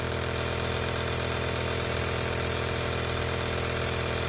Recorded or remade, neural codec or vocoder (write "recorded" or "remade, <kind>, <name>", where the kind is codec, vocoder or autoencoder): recorded